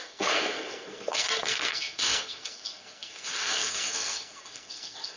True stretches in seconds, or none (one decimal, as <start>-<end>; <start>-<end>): none

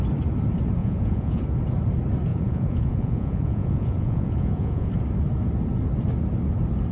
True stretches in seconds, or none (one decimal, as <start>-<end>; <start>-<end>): 0.0-0.8; 1.4-2.3; 4.9-6.9

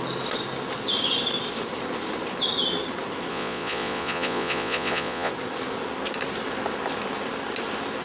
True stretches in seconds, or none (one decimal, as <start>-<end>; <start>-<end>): 0.0-3.3; 5.3-8.0

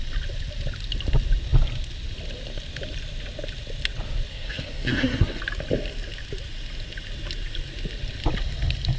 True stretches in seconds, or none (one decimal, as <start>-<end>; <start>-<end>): 0.0-4.3; 5.4-9.0

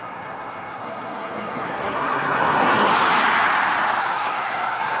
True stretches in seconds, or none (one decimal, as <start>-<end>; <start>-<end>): 2.9-4.0

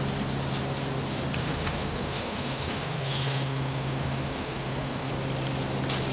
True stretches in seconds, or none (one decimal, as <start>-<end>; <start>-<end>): 0.0-1.4; 5.1-6.1

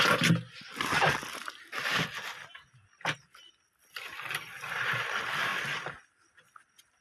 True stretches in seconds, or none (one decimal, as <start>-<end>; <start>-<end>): 0.0-7.0

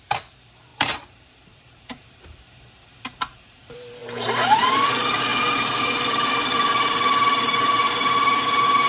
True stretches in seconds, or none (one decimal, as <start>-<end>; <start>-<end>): 5.3-5.8